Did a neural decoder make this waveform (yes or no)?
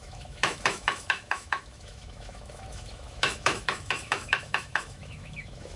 yes